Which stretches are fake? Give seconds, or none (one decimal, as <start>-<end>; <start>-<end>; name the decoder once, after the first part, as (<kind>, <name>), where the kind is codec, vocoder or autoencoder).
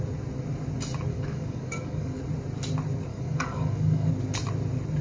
1.1-2.2 (codec, DAC); 3.1-4.1